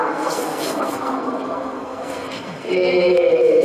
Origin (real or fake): fake